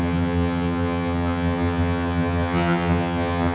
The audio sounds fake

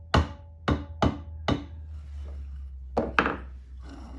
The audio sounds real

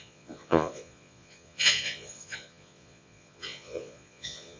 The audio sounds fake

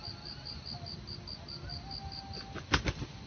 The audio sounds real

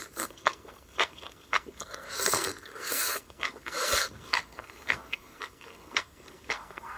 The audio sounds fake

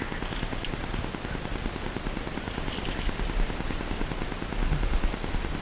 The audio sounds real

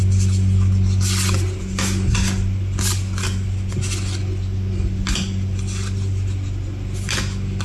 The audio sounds real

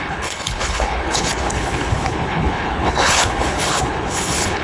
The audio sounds fake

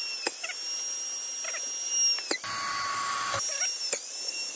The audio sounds real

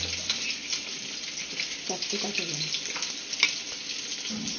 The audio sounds real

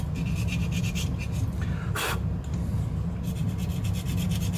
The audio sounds real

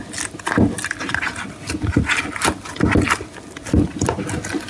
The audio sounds real